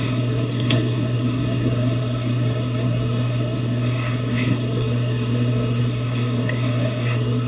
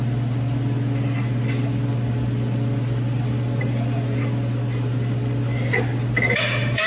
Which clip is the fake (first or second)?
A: first